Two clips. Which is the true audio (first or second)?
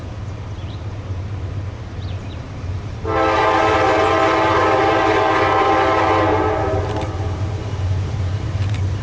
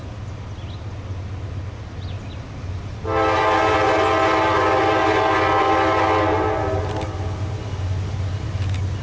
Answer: second